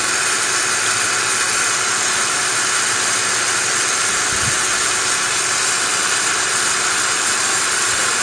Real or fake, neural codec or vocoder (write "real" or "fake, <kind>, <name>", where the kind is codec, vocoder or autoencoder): real